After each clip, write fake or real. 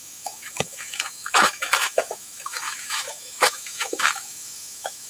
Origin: fake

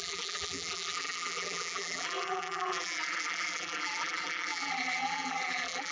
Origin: fake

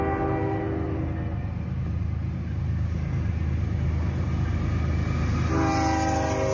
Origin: real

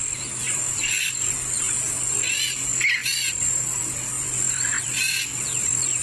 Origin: real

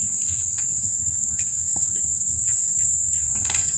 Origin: fake